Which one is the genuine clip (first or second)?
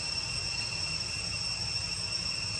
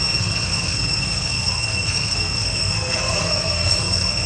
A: first